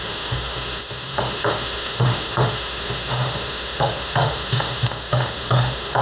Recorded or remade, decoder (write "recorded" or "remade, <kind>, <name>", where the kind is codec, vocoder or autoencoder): remade, autoencoder, DAC-VAE